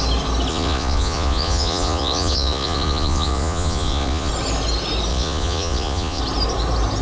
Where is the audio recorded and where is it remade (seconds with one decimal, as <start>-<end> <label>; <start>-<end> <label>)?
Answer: 0.0-0.5 recorded; 0.5-4.3 remade; 4.3-5.1 recorded; 5.1-6.2 remade; 6.2-7.0 recorded